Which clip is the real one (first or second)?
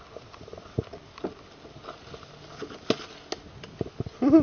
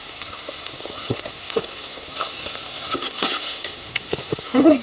first